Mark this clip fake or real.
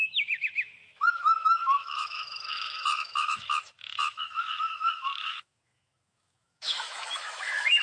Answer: fake